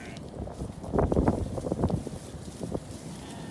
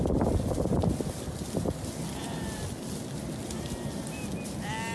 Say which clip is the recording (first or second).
second